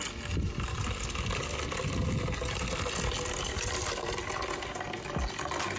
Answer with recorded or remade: recorded